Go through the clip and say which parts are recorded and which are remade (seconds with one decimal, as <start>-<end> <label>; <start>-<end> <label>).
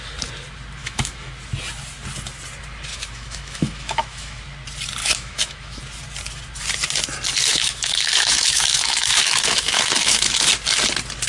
0.0-0.8 recorded; 0.8-1.3 remade; 1.3-2.9 recorded; 2.9-4.4 remade; 4.4-5.0 recorded; 5.0-5.8 remade; 5.8-7.5 recorded; 7.5-10.5 remade; 10.5-11.3 recorded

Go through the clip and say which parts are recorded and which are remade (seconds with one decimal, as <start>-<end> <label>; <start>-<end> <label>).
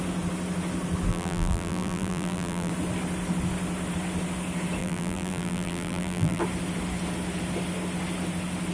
0.0-1.1 recorded; 1.1-2.7 remade; 2.7-4.8 recorded; 4.8-6.4 remade; 6.4-8.7 recorded